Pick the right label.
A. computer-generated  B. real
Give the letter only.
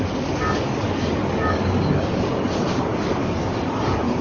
A